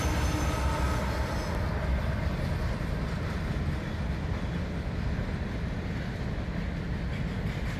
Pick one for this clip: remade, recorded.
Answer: recorded